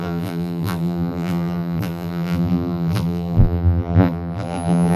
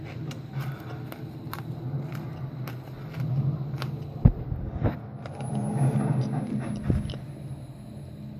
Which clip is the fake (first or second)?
first